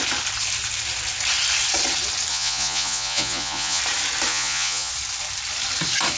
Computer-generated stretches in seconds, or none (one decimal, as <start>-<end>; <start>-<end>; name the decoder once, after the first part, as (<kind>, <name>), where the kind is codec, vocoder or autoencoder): 2.3-3.8 (vocoder, Vocos); 4.3-4.9